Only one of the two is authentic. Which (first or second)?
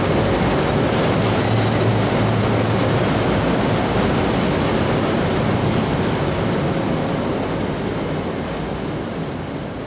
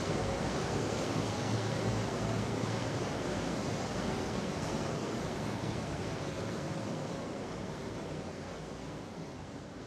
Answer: first